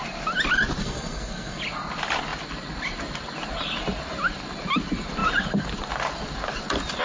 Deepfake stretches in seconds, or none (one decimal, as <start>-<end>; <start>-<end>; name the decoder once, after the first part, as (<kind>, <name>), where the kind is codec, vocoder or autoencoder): 0.8-1.6 (codec, SNAC)